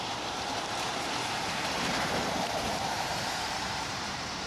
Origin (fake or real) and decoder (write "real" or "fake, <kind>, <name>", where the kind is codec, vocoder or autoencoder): fake, vocoder, BigVGAN v2